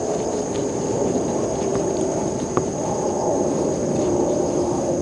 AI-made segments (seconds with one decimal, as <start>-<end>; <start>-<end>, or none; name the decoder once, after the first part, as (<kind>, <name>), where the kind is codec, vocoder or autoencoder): none